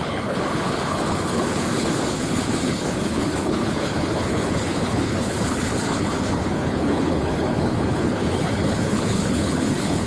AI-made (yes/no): yes